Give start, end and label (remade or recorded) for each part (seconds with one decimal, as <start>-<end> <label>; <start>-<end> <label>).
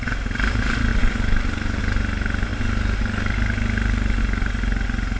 0.0-5.2 recorded